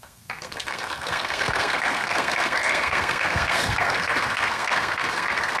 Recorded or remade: remade